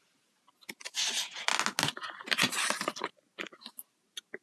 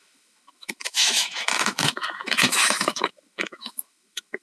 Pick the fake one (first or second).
second